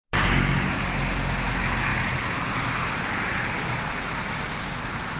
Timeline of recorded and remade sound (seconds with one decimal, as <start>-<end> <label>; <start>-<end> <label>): 0.0-5.2 recorded